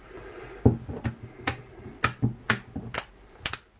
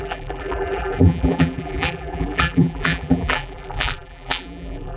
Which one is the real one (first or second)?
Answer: first